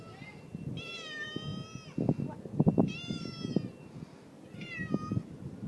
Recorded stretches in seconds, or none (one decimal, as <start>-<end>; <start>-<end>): 0.0-5.7